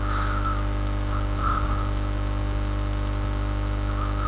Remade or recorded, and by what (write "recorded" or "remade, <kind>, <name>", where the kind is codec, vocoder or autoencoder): recorded